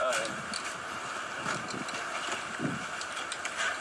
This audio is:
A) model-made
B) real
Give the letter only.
B